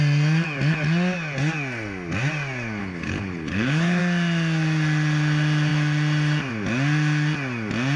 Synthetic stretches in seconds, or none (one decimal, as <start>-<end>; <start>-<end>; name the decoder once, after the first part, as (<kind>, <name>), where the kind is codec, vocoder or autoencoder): 2.8-4.0 (codec, HILCodec)